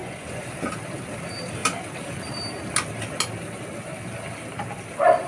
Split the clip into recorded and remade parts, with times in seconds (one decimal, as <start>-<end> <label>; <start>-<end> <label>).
0.0-0.5 remade; 0.5-5.3 recorded